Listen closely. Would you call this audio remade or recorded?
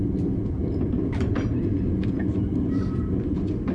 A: recorded